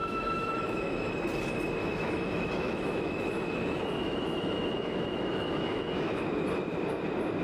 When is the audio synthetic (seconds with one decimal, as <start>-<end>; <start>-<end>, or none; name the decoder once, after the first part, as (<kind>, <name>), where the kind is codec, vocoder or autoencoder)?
0.0-1.1 (autoencoder, DAC-VAE); 1.8-6.2